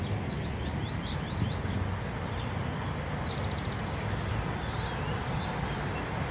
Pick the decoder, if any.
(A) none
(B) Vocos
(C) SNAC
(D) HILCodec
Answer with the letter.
A